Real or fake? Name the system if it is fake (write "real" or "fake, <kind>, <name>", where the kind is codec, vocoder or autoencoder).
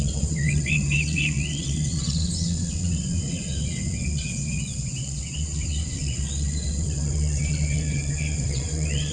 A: fake, vocoder, WaveNeXt